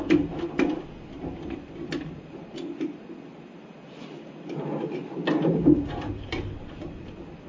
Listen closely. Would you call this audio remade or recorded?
recorded